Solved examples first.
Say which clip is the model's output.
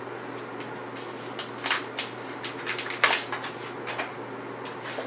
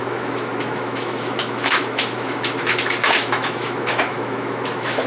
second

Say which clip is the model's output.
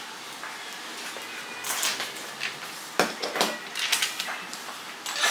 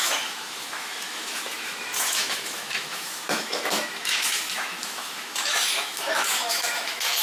second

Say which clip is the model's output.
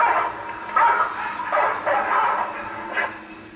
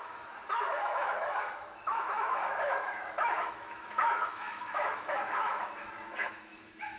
second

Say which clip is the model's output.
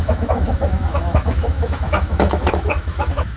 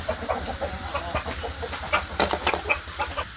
first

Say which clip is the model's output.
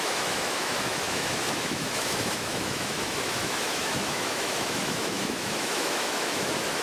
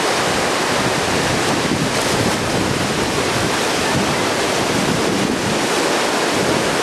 first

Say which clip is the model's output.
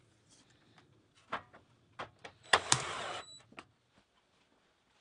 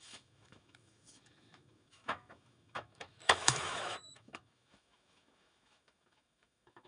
second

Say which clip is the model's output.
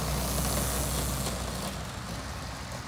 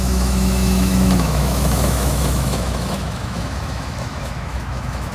second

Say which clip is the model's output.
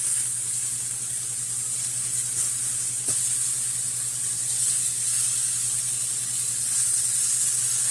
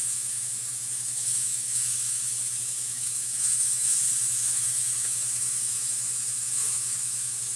second